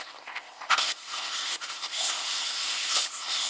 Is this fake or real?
fake